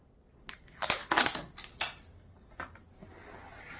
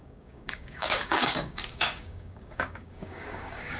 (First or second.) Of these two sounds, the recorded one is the first